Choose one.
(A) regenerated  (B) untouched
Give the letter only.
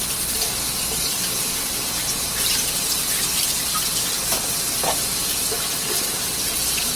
B